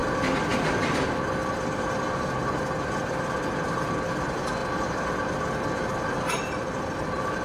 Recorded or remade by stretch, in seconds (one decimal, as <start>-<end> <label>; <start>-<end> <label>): 0.0-3.4 recorded; 3.4-4.6 remade; 4.6-6.1 recorded; 6.1-7.4 remade